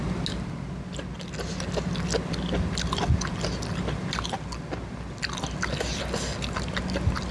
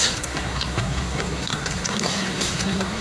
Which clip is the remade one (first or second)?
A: second